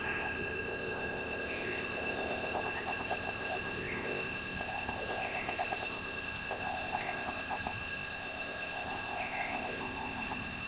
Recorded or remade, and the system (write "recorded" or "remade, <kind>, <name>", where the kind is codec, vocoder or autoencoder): remade, codec, ZipCodec